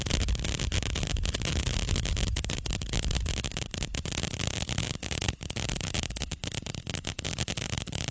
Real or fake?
real